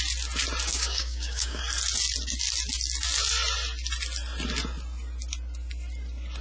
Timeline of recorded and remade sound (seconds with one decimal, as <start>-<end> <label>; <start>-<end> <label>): 0.0-0.7 recorded; 0.7-1.6 remade; 1.6-6.4 recorded